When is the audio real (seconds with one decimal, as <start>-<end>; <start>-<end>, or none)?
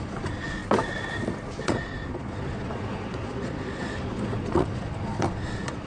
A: 0.6-1.6